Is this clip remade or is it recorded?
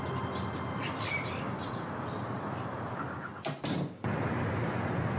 recorded